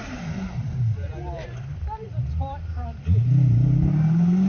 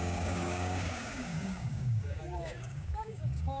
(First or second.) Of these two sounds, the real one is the first